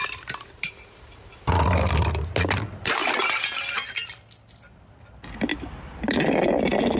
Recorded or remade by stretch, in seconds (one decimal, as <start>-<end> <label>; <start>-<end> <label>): 0.0-0.7 remade; 0.7-5.5 recorded; 5.5-6.3 remade; 6.3-7.0 recorded